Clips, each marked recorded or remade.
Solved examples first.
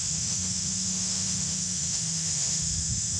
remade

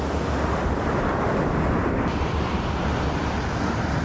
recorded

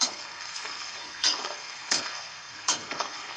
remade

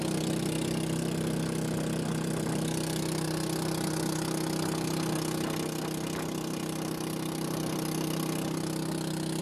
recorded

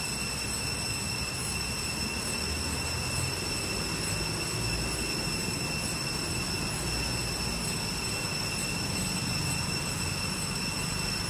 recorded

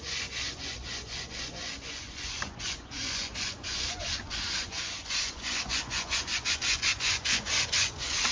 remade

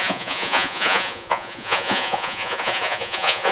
remade